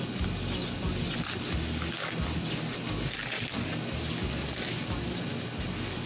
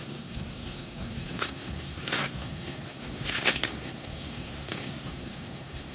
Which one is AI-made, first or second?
second